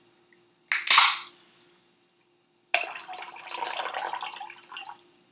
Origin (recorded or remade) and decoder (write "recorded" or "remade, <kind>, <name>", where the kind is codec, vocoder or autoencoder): recorded